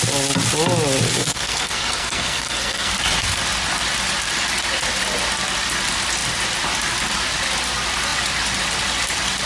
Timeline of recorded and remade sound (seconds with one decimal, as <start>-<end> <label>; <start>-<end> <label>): 0.0-1.2 recorded; 1.2-2.9 remade; 2.9-9.5 recorded